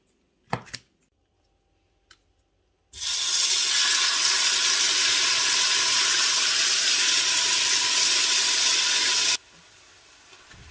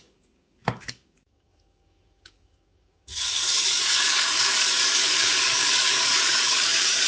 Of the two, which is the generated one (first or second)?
second